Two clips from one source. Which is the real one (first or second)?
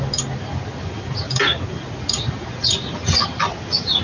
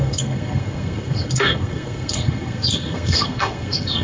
first